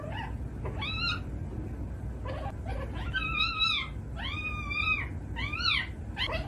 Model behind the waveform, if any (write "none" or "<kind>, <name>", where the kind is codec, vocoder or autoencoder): none